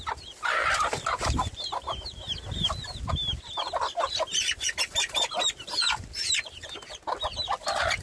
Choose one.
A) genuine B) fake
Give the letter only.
A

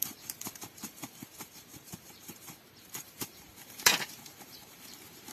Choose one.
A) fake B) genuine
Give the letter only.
A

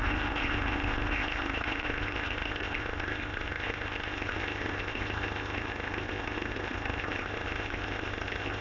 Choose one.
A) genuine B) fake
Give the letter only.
B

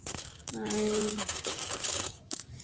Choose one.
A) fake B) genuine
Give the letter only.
A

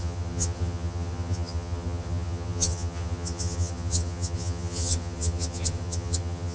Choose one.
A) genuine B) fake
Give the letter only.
B